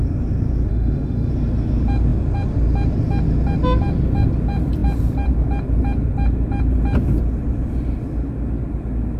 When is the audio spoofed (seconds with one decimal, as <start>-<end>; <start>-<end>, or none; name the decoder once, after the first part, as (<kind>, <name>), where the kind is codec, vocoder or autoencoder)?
0.7-1.3 (autoencoder, DAC-VAE)